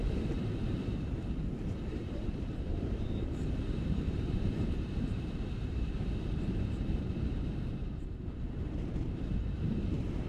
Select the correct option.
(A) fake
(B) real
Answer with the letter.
A